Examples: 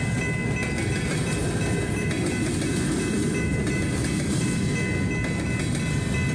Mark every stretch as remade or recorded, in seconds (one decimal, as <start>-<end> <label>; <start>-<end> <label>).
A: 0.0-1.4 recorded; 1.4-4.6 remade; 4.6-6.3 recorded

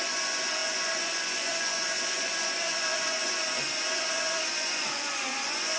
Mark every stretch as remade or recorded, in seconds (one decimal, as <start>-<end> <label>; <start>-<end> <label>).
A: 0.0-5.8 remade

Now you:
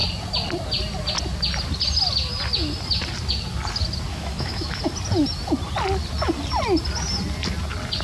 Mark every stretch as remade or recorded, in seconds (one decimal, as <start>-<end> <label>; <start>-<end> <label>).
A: 0.0-4.1 recorded; 4.1-4.8 remade; 4.8-8.0 recorded

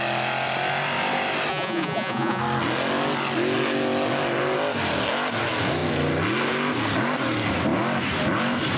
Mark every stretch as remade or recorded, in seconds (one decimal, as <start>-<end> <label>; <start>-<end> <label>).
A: 0.0-1.5 recorded; 1.5-2.4 remade; 2.4-8.8 recorded

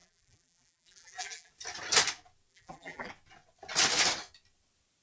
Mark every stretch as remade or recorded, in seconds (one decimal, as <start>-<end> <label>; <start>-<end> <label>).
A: 0.0-1.5 remade; 1.5-2.5 recorded; 2.5-3.1 remade; 3.1-5.0 recorded

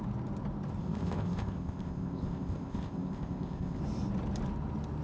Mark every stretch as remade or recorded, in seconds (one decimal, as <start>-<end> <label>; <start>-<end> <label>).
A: 0.0-0.8 recorded; 0.8-3.8 remade; 3.8-5.0 recorded